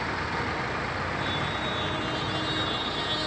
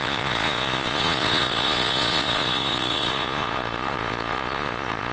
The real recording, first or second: first